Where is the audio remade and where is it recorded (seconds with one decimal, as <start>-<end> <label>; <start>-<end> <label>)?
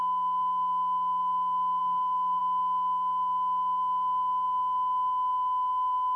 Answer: 0.0-1.8 recorded; 1.8-2.4 remade; 2.4-6.2 recorded